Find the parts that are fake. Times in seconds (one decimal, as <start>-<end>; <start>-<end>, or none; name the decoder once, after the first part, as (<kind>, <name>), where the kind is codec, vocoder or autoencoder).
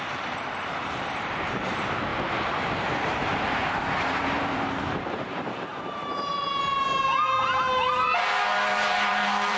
0.0-2.1 (vocoder, BigVGAN v2); 2.6-5.7; 6.3-6.8; 7.4-9.6